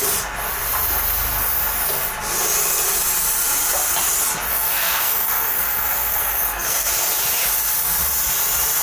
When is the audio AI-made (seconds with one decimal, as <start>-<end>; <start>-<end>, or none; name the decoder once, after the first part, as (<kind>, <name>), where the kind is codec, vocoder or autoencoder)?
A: 4.5-6.9 (codec, SNAC)